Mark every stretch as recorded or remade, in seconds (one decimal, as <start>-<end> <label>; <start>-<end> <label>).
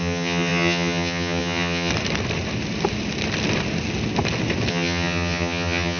0.0-1.9 remade; 1.9-4.7 recorded; 4.7-6.0 remade